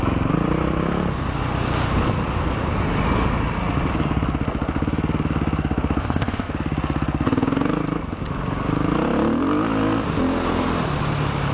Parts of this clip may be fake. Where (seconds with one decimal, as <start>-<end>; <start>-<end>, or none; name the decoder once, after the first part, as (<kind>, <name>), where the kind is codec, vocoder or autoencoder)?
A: 6.0-6.5 (codec, ZipCodec)